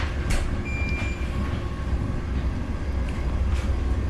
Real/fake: real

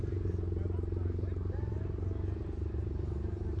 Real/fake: real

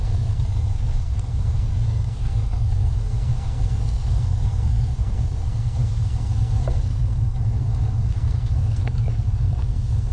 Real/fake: fake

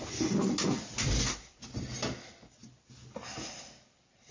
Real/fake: real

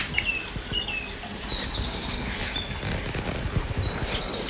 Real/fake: real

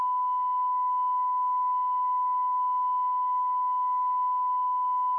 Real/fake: fake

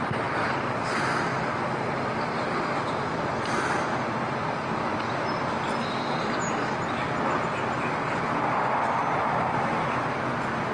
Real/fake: real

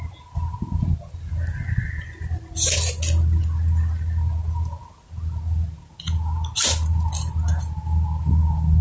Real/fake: real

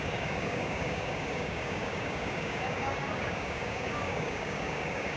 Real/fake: fake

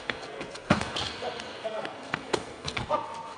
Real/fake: fake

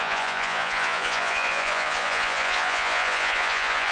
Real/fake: fake